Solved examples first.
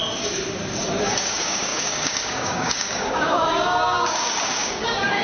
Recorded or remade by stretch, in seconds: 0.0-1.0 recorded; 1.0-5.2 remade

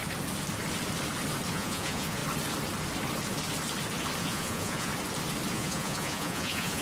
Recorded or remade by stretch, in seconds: 0.0-1.5 recorded; 1.5-2.2 remade; 2.2-4.2 recorded; 4.2-4.9 remade; 4.9-5.5 recorded; 5.5-6.8 remade